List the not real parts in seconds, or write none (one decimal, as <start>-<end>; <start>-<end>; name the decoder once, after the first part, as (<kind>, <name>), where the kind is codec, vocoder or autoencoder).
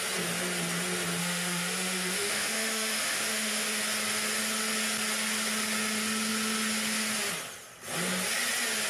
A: 1.2-3.8 (autoencoder, DAC-VAE)